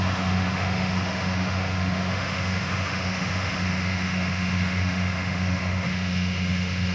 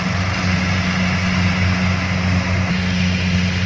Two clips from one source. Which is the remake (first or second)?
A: first